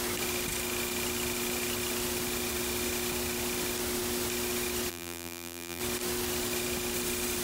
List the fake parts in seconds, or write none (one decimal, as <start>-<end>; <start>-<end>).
4.9-5.8